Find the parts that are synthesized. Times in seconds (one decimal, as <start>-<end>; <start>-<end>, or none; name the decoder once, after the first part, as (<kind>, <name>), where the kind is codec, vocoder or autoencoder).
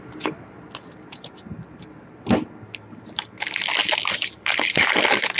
none